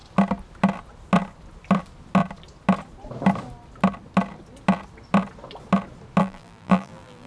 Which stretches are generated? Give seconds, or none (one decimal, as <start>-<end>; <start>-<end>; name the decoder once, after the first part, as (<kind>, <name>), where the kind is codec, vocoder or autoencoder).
6.2-7.3 (vocoder, BigVGAN v2)